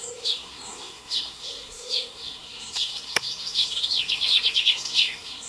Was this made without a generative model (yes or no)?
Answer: no